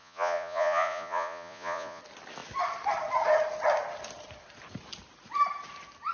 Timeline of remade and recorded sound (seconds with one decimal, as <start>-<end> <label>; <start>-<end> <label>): 0.0-2.0 remade; 2.0-6.1 recorded

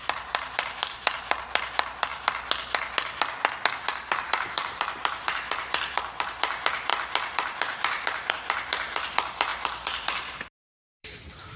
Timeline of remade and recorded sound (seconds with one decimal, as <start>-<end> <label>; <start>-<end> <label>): 0.0-2.1 remade; 2.1-4.2 recorded; 4.2-11.6 remade

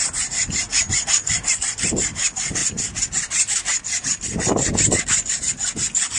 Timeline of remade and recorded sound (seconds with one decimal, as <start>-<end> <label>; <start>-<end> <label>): 0.0-6.2 recorded

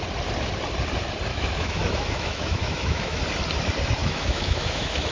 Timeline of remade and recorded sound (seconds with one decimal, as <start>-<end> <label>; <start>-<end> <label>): 0.0-1.3 recorded; 1.3-3.2 remade; 3.2-4.0 recorded; 4.0-5.1 remade

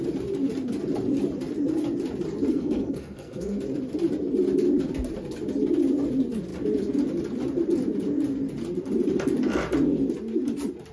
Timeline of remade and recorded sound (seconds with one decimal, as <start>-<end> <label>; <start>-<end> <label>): 0.0-2.5 recorded; 2.5-3.6 remade; 3.6-10.9 recorded

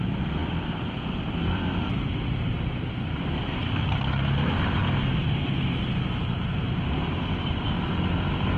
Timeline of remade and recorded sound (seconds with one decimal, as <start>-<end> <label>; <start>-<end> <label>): 0.0-4.8 remade; 4.8-7.6 recorded; 7.6-8.6 remade

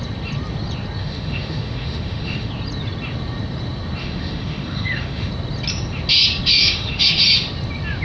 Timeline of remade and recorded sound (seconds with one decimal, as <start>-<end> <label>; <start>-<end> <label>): 0.0-1.0 recorded; 1.0-2.5 remade; 2.5-4.0 recorded; 4.0-5.3 remade; 5.3-6.6 recorded; 6.6-7.2 remade; 7.2-8.0 recorded